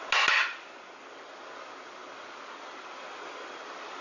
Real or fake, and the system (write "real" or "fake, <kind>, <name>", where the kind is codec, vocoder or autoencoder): real